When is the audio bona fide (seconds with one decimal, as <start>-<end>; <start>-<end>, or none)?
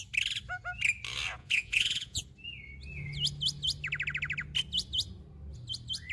0.0-1.4; 2.2-6.1